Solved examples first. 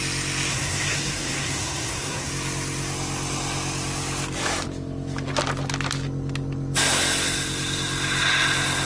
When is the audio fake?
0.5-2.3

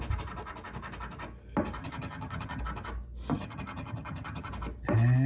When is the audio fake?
1.8-2.6; 3.3-4.5

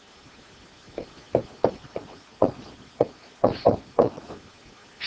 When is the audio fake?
1.8-4.3